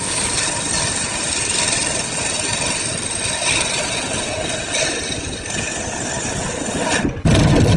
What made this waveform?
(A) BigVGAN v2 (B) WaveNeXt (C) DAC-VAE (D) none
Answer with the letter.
D